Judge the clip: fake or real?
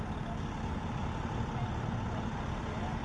real